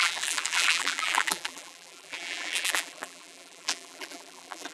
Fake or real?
fake